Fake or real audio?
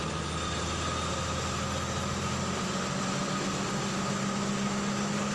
real